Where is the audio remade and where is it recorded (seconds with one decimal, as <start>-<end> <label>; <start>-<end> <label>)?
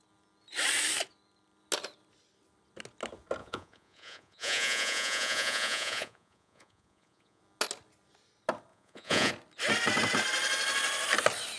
0.0-3.4 recorded; 3.4-7.4 remade; 7.4-8.7 recorded; 8.7-9.3 remade; 9.3-11.6 recorded